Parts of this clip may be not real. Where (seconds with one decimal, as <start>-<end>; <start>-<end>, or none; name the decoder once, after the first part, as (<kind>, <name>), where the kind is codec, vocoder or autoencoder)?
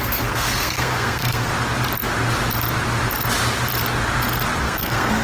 0.0-1.5 (codec, SNAC); 4.6-5.2